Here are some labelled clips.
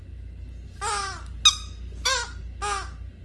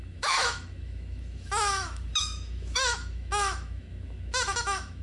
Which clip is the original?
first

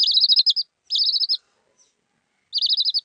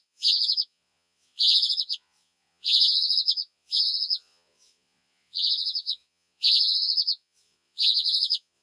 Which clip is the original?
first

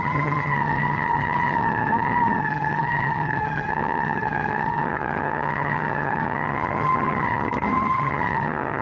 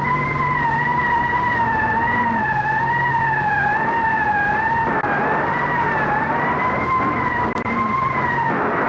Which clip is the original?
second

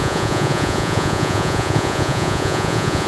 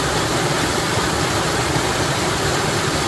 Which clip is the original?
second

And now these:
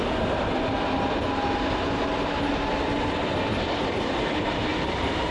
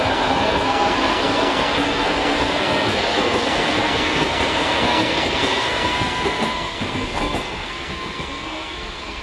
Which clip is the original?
first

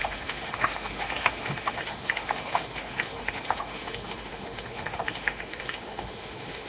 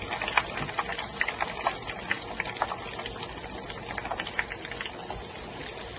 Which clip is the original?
second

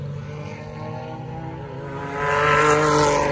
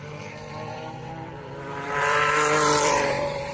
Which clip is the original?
first